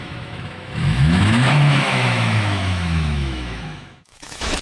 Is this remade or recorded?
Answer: remade